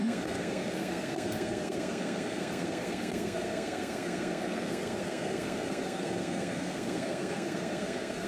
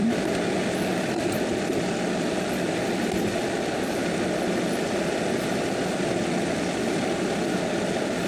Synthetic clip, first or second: first